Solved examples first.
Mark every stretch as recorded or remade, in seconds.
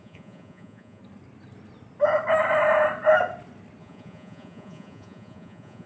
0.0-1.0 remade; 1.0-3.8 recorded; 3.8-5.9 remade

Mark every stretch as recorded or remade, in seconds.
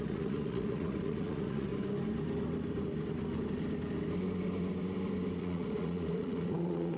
0.0-1.7 remade; 1.7-5.4 recorded; 5.4-7.0 remade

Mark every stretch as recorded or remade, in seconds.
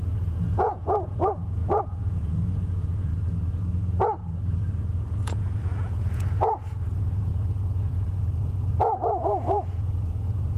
0.0-3.1 remade; 3.1-5.1 recorded; 5.1-10.6 remade